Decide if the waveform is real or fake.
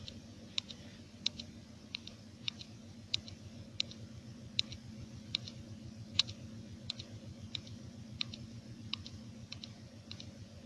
fake